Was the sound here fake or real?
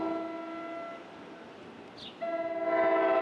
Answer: real